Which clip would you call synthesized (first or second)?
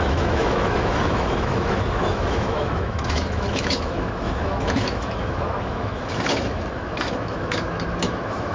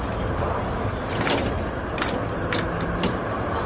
first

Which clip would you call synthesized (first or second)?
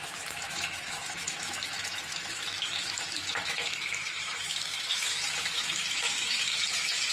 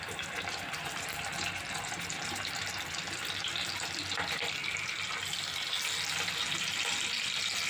first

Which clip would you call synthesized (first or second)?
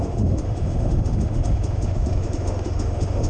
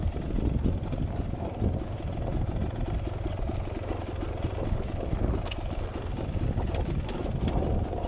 first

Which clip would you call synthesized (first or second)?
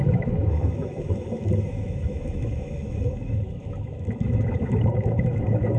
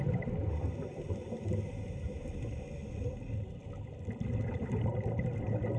first